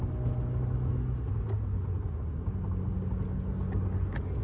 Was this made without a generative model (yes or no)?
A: yes